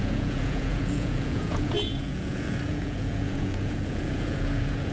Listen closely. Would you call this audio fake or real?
fake